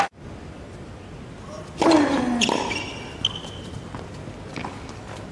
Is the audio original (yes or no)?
yes